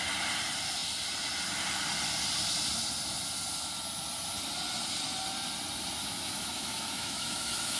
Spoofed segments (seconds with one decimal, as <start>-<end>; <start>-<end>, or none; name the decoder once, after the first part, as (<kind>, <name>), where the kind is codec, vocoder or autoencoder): 6.0-7.8 (autoencoder, DAC-VAE)